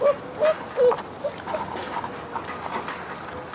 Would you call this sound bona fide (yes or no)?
yes